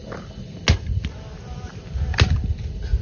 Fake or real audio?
real